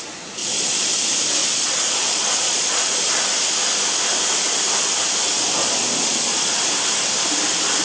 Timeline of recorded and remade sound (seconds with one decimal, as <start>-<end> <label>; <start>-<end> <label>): 0.0-0.4 recorded; 0.4-0.9 remade; 0.9-1.4 recorded; 1.4-3.0 remade; 3.0-5.6 recorded; 5.6-6.6 remade; 6.6-7.8 recorded